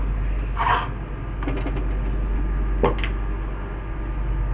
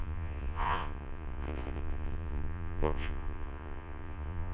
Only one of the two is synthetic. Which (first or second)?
second